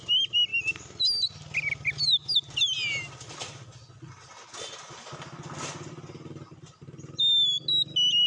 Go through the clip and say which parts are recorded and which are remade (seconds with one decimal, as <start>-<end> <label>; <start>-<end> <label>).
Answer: 0.0-8.3 recorded